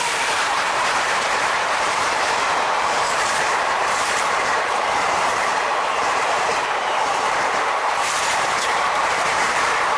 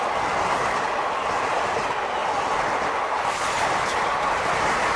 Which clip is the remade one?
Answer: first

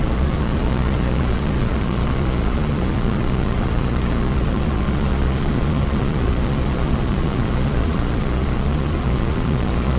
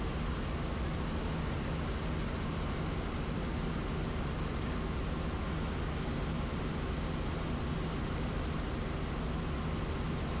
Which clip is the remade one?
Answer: first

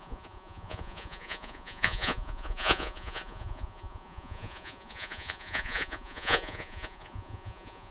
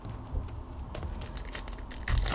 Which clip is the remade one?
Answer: first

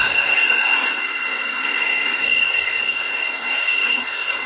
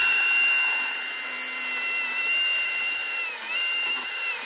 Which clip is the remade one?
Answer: first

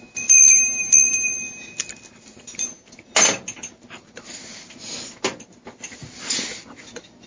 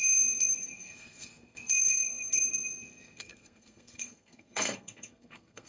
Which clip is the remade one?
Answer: second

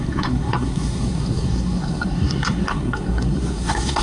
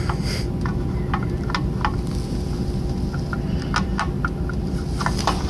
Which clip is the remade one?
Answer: first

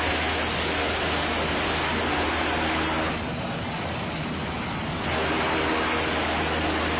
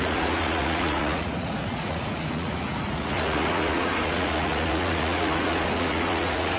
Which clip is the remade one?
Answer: second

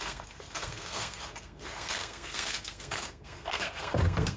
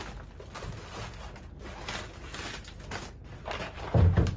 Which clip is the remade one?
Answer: first